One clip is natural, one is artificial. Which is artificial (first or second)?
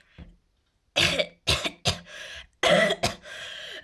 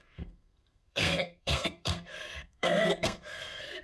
second